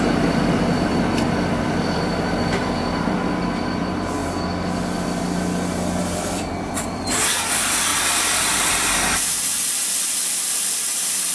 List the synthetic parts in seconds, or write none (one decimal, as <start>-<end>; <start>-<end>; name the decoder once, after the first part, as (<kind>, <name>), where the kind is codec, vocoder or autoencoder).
0.0-4.2 (vocoder, BigVGAN v2); 6.0-11.3